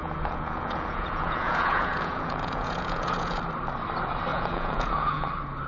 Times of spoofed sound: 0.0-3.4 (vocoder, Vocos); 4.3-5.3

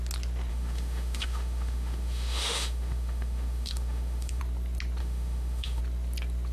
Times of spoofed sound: 0.5-4.4 (autoencoder, DAC-VAE); 5.0-5.8

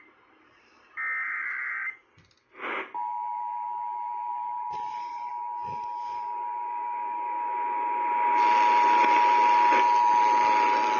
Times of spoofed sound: 4.3-5.3 (vocoder, BigVGAN v2)

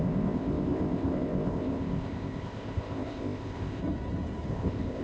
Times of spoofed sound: 0.0-3.8 (codec, ZipCodec); 4.5-5.0

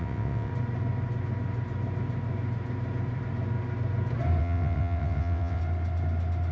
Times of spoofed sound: 0.0-0.5 (vocoder, WaveNeXt); 4.4-5.6

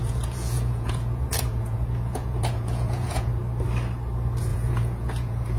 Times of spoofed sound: 0.0-3.4 (vocoder, Vocos); 4.5-5.6

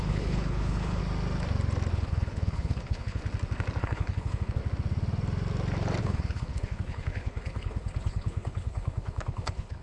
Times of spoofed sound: 0.0-1.0 (codec, HILCodec); 1.9-3.2; 3.8-4.6; 6.0-9.8

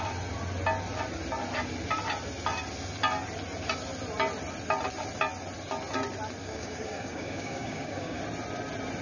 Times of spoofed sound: 6.4-8.2 (codec, DAC)